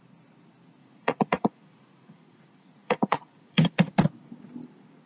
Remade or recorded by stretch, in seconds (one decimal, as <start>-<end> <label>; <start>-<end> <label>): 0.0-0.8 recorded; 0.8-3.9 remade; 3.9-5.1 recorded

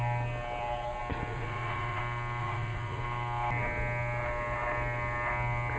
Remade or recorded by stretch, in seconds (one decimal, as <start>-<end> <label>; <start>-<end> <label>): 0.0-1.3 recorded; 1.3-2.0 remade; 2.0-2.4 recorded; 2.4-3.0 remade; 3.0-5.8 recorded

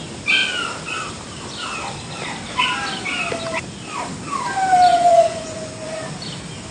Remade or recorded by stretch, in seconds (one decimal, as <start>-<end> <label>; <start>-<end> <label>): 0.0-4.9 recorded; 4.9-6.1 remade; 6.1-6.7 recorded